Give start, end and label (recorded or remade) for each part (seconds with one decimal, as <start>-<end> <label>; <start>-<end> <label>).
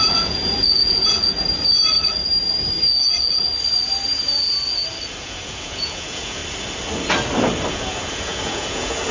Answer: 0.0-1.3 remade; 1.3-5.2 recorded; 5.2-6.4 remade; 6.4-7.7 recorded; 7.7-9.1 remade